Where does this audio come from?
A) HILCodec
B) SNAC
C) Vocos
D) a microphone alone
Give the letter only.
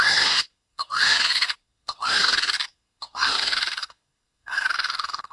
B